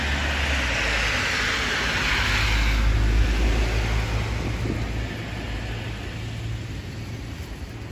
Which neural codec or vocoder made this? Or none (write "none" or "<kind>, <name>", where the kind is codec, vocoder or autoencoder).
none